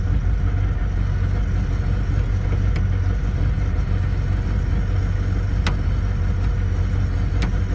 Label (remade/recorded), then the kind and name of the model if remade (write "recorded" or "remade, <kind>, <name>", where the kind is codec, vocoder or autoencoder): recorded